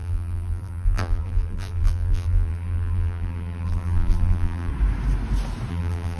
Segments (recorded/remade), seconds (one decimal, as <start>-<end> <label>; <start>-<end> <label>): 0.0-4.7 remade; 4.7-5.7 recorded; 5.7-6.2 remade